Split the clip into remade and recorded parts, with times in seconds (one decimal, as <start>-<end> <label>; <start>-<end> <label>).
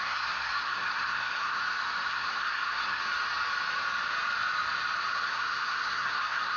0.0-1.6 remade; 1.6-2.1 recorded; 2.1-3.0 remade; 3.0-5.1 recorded; 5.1-6.6 remade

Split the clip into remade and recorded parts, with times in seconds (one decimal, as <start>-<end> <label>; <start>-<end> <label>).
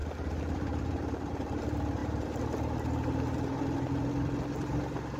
0.0-5.2 recorded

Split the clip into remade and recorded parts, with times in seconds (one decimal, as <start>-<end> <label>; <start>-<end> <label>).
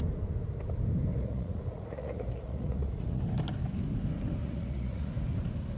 0.0-1.1 recorded; 1.1-3.2 remade; 3.2-4.4 recorded; 4.4-5.1 remade; 5.1-5.8 recorded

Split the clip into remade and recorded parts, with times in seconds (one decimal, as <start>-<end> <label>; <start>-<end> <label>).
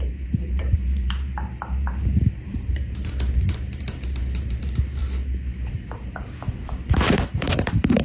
0.0-5.0 remade; 5.0-5.7 recorded; 5.7-8.0 remade